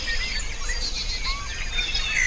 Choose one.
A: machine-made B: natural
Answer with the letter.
B